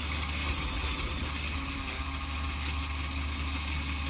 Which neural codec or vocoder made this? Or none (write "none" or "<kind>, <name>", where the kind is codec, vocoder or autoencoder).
none